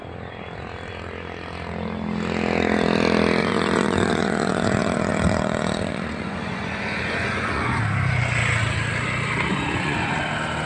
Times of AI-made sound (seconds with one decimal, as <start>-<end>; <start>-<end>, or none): 3.4-7.8; 9.5-10.2